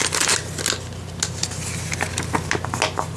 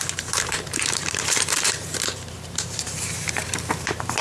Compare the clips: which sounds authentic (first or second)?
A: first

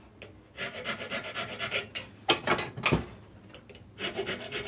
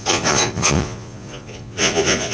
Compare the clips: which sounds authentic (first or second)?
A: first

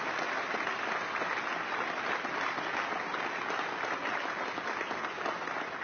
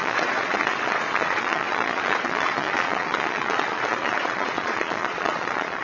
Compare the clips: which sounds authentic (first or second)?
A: first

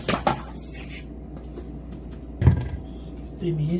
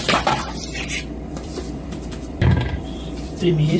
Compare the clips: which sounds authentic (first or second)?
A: first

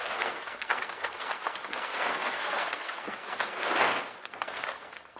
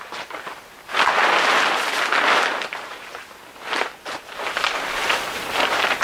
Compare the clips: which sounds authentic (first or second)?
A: second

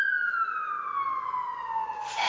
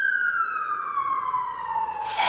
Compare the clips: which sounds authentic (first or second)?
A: first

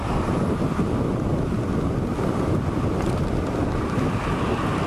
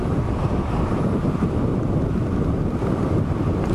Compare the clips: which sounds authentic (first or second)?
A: first